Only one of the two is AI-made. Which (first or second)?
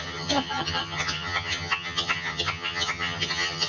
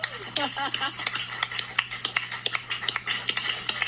first